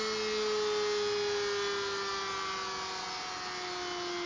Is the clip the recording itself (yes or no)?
yes